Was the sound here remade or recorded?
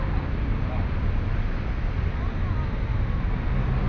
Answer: recorded